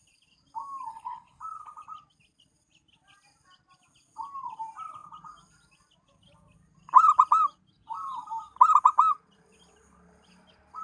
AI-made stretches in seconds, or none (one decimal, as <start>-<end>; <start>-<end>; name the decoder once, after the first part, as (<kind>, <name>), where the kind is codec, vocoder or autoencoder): 0.9-1.4 (codec, HILCodec)